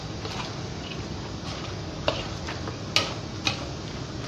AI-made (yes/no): no